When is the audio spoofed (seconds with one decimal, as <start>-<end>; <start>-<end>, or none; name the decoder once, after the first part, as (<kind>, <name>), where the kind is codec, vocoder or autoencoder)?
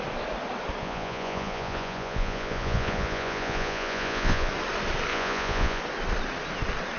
0.8-4.5 (vocoder, Vocos); 5.1-5.8